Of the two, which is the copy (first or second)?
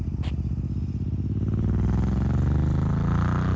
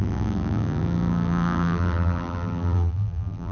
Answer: second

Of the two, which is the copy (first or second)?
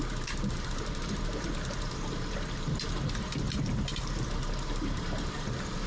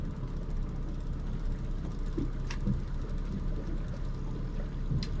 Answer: first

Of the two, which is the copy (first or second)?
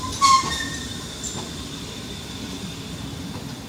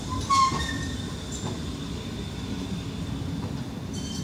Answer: first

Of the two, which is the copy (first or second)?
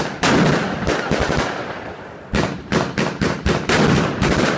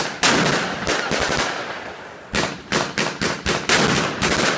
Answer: first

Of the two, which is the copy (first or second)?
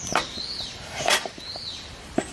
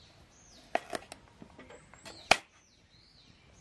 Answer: first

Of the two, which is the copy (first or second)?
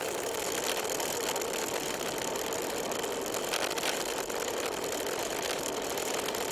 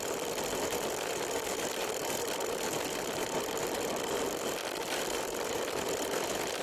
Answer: second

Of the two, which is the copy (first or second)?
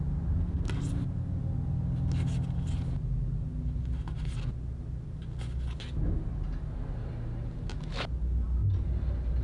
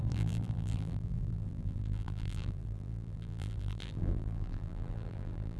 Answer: second